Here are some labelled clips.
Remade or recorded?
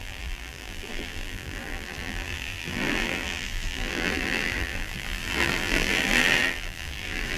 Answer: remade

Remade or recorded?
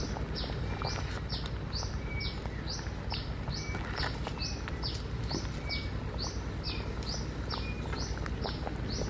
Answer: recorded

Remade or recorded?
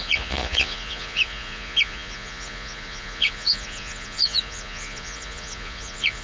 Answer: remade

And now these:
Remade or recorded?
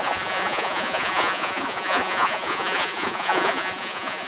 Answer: remade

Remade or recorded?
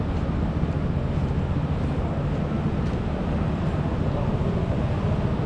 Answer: recorded